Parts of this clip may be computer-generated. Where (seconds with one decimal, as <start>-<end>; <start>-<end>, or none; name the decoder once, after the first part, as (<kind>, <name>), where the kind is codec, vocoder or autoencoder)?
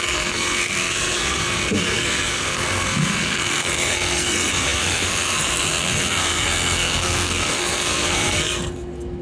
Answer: 0.0-9.2 (codec, SNAC)